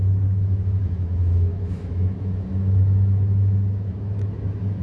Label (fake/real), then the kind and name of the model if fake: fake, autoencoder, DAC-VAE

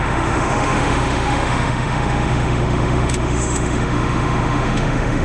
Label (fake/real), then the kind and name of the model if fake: fake, autoencoder, DAC-VAE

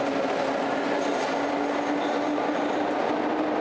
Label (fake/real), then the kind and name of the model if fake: real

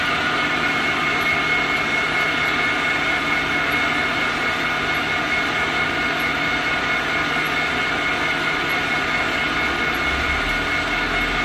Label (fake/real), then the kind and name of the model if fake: real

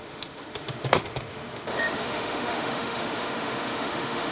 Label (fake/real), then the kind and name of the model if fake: fake, autoencoder, DAC-VAE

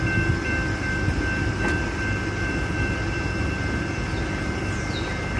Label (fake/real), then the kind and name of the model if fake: real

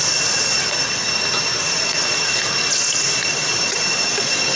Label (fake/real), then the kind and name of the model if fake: real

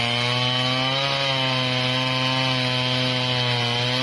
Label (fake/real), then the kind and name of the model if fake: real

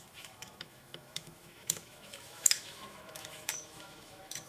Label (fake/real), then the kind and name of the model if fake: fake, autoencoder, DAC-VAE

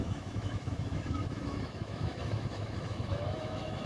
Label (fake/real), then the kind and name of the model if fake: fake, autoencoder, DAC-VAE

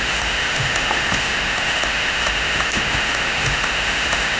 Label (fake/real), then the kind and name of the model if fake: fake, autoencoder, DAC-VAE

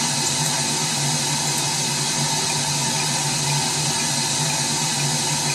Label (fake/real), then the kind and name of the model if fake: real